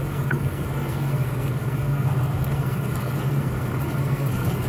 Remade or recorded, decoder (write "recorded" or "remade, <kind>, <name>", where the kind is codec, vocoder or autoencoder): remade, codec, SNAC